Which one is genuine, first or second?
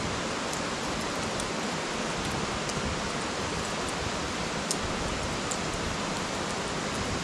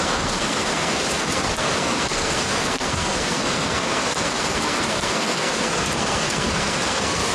first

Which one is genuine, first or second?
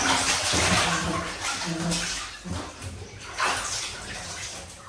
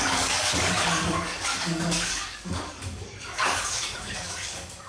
first